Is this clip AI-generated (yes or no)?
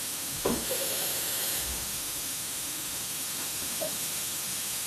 yes